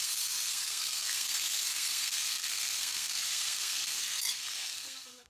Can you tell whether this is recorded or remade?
remade